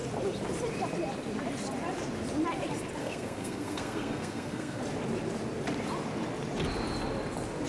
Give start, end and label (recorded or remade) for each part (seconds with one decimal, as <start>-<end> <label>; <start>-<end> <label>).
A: 0.0-3.0 recorded; 3.0-4.8 remade; 4.8-7.7 recorded